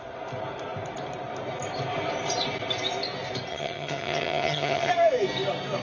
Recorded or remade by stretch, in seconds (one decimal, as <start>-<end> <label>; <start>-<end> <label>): 0.0-3.5 recorded; 3.5-4.9 remade; 4.9-5.8 recorded